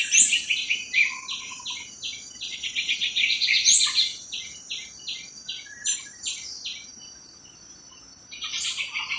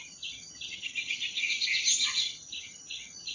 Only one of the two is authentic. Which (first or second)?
first